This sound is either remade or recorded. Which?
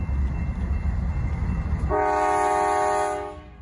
recorded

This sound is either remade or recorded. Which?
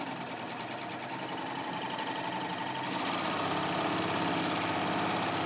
recorded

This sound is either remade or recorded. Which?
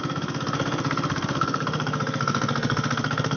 remade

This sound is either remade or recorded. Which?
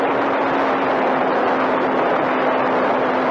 recorded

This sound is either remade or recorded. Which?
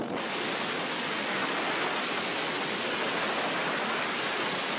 recorded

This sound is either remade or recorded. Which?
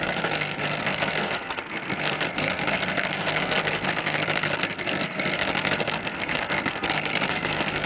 remade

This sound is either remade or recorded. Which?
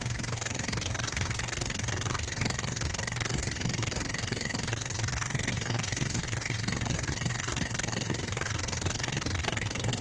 remade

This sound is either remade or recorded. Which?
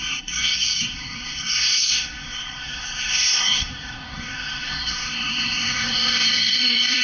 remade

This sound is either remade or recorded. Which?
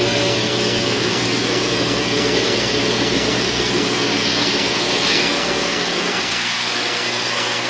remade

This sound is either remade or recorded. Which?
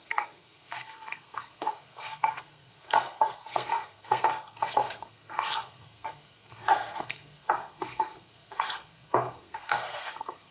remade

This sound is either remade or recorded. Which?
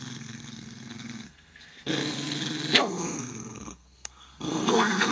remade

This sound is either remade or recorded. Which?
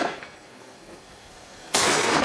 remade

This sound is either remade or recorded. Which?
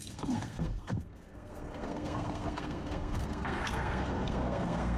remade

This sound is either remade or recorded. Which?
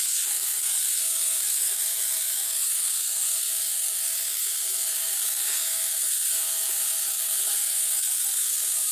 remade